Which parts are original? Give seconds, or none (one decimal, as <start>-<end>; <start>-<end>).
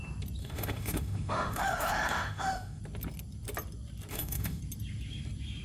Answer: 0.0-0.4; 2.8-4.1; 4.6-5.6